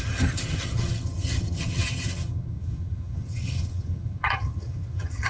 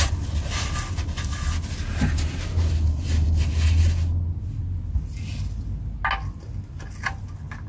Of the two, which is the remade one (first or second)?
first